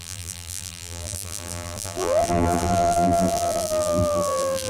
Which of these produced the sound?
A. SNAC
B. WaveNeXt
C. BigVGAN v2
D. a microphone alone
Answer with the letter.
C